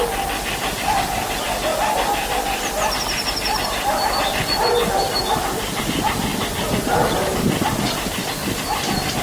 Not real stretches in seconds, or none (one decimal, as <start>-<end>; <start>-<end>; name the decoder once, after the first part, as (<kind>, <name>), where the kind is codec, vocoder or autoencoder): 0.0-9.2 (vocoder, BigVGAN v2)

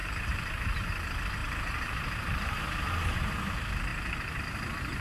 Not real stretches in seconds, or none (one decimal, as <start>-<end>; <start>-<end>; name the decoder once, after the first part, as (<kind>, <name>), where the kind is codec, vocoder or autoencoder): 0.0-0.9 (vocoder, BigVGAN v2); 1.4-3.5; 3.9-4.4

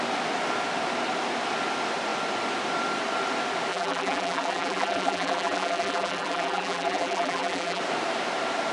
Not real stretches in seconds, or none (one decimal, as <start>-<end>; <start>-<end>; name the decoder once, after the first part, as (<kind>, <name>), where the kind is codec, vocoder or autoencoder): 3.7-7.8 (vocoder, BigVGAN v2)

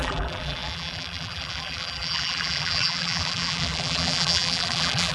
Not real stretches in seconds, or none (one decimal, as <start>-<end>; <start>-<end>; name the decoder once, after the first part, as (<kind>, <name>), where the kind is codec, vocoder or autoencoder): 0.0-5.1 (vocoder, BigVGAN v2)